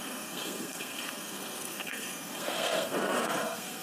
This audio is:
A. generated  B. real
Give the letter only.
A